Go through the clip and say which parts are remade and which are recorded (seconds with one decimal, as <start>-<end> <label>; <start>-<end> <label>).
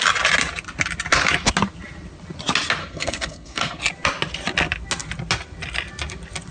0.0-2.8 recorded; 2.8-3.8 remade; 3.8-6.5 recorded